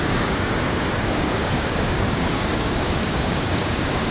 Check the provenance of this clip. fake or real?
fake